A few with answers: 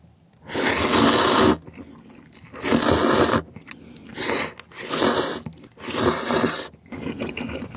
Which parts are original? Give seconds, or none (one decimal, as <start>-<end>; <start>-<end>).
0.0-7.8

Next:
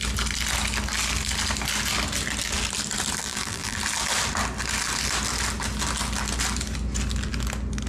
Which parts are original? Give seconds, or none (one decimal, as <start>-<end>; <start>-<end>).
0.0-3.2; 3.8-7.9

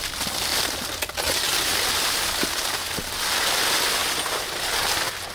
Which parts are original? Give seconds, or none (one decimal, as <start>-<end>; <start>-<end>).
0.0-0.5; 1.0-5.3

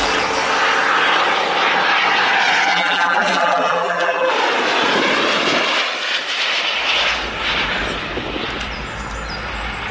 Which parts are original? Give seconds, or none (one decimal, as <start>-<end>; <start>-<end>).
0.0-2.7; 4.3-9.9

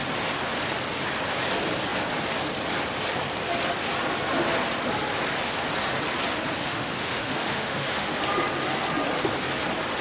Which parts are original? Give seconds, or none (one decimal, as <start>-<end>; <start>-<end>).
0.0-6.6; 8.2-10.0

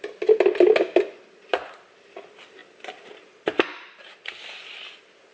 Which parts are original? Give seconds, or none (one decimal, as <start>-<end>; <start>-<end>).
0.0-5.3

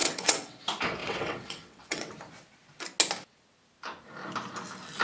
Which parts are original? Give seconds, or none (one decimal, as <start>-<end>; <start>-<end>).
0.6-1.0; 2.1-5.0